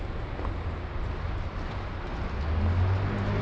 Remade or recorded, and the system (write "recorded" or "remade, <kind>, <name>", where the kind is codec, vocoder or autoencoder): recorded